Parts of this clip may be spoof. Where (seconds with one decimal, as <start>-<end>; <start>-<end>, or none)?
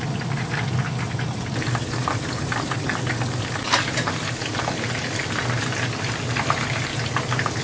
none